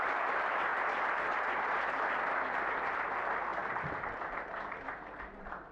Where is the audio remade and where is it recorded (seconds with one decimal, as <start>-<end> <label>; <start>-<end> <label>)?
0.0-0.7 recorded; 0.7-1.4 remade; 1.4-5.7 recorded